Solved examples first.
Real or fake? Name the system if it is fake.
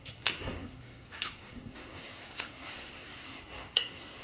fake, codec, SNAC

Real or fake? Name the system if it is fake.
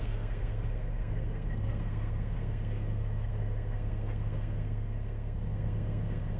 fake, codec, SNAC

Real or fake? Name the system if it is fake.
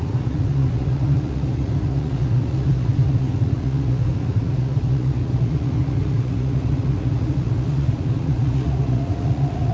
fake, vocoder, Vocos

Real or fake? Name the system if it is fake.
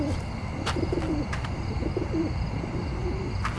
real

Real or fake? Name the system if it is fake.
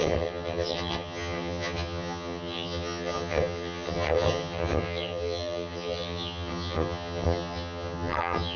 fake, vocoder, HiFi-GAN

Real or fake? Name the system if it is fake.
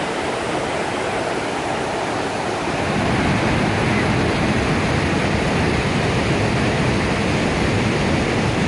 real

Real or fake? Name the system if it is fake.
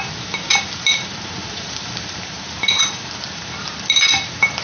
fake, vocoder, BigVGAN v2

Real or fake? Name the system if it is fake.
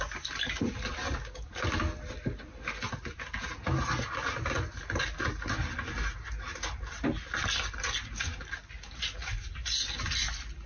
real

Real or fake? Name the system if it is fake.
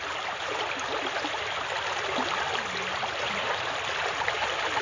real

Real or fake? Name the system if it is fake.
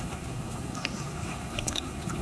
fake, codec, SNAC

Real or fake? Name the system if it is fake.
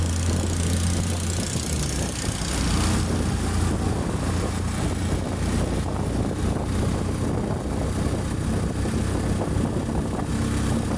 real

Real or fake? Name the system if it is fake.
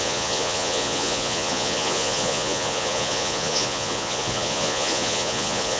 fake, vocoder, Vocos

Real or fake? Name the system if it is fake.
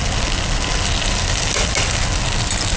real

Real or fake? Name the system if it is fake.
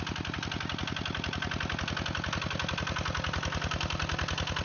real